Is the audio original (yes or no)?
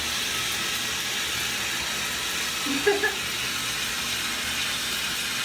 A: yes